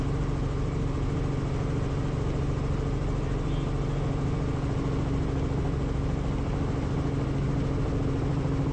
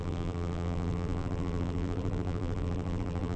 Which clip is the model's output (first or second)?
second